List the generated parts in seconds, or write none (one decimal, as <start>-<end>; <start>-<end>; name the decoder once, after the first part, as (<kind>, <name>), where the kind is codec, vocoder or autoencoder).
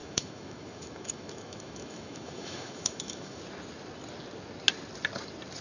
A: 0.0-3.4 (autoencoder, DAC-VAE)